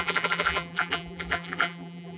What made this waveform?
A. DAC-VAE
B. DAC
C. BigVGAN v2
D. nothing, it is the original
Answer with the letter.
C